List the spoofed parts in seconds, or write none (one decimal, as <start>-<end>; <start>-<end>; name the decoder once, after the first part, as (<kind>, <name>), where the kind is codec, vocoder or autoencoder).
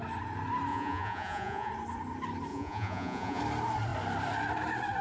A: 0.7-1.7 (vocoder, Vocos); 2.5-3.4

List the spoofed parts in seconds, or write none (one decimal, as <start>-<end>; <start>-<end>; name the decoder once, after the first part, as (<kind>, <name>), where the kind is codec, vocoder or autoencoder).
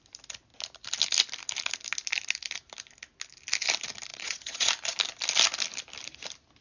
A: 4.1-4.7 (vocoder, Vocos)